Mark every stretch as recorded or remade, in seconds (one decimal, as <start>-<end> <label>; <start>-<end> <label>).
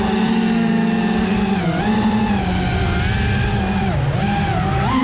0.0-5.0 recorded